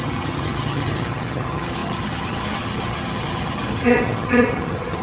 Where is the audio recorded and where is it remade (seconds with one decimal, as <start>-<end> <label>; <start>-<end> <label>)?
0.0-5.0 remade